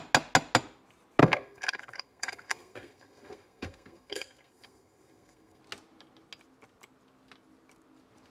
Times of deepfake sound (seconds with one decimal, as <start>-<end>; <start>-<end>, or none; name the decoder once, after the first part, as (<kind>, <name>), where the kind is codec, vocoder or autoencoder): 1.2-5.6 (codec, SNAC)